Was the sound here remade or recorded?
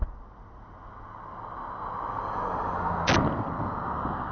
recorded